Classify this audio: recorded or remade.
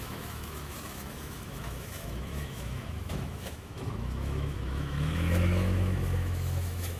remade